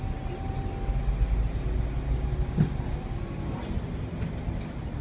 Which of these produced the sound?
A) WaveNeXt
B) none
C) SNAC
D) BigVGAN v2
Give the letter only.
B